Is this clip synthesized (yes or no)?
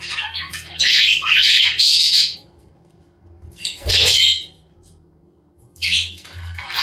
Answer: yes